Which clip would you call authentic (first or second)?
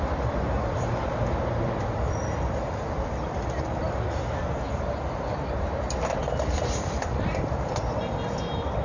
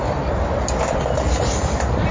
second